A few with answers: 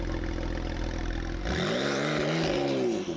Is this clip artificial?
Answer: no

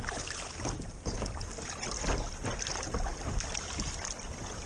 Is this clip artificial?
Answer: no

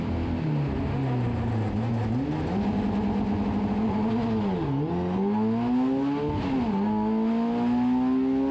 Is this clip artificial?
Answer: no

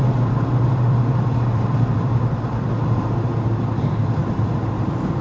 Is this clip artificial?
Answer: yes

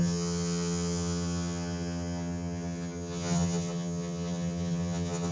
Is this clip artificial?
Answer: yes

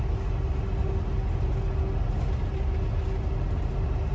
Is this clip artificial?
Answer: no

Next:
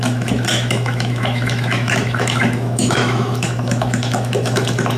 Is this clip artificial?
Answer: yes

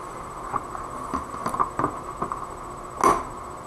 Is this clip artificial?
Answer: no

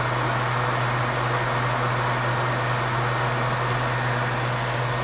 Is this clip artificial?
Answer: no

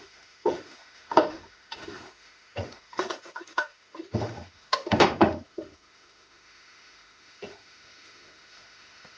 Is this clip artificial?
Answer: yes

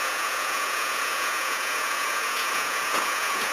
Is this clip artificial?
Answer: yes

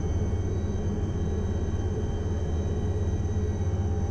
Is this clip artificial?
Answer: yes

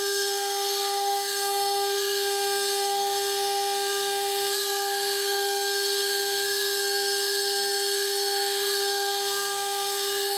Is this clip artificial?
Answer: yes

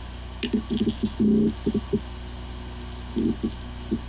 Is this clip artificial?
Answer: no